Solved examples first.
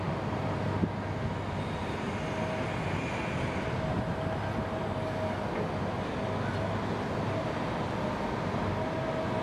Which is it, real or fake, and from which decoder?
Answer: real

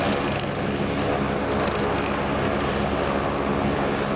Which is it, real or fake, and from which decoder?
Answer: real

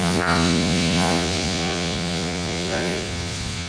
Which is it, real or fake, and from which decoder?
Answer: fake, vocoder, Vocos